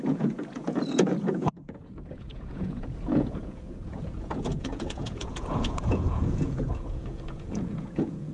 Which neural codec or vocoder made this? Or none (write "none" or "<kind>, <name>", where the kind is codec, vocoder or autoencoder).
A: vocoder, Vocos